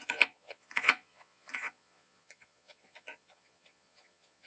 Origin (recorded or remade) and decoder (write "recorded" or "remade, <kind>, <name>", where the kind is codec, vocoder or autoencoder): remade, vocoder, Vocos